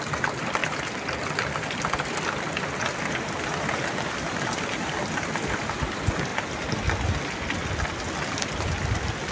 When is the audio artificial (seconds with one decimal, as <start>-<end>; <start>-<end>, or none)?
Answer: none